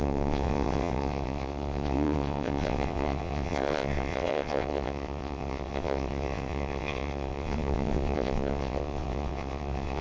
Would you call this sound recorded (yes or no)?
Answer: no